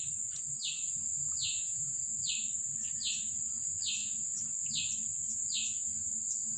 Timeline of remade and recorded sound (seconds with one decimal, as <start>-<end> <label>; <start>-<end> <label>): 0.0-1.4 recorded; 1.4-2.0 remade; 2.0-6.6 recorded